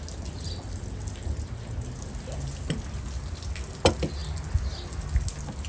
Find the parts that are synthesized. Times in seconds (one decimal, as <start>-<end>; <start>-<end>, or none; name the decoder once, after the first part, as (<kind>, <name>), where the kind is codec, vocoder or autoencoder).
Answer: none